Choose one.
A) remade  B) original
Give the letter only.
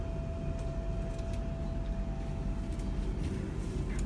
B